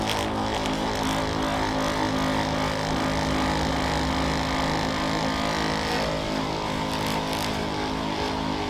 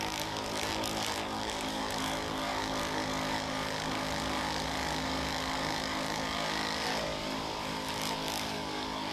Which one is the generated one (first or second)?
second